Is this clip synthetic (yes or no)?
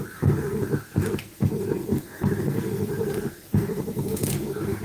yes